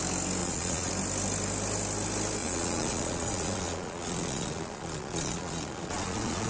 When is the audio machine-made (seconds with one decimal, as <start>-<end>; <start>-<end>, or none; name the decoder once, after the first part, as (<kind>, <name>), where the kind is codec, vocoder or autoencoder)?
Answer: 0.4-0.9 (vocoder, Vocos); 2.4-6.5